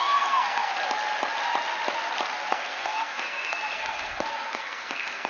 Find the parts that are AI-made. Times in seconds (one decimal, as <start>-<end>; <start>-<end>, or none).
0.0-0.7; 2.5-5.3